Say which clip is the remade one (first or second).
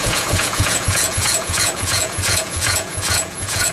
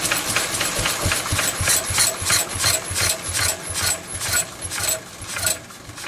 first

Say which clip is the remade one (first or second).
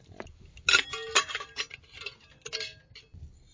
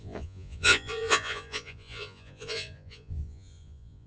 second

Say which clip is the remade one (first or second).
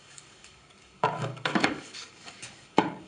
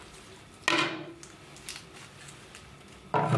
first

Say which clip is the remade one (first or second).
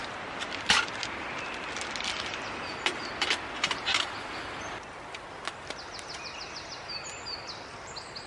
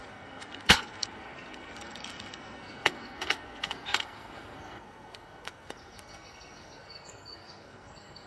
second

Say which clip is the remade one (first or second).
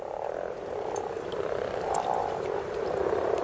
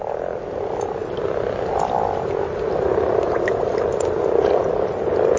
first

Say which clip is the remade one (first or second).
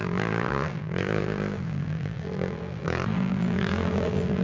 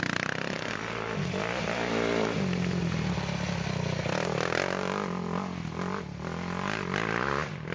first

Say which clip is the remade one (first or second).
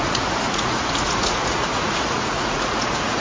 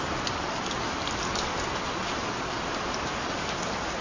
first